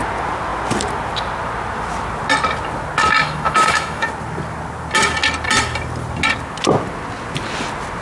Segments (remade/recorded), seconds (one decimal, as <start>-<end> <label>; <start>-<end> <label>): 0.0-3.2 recorded; 3.2-4.1 remade; 4.1-8.0 recorded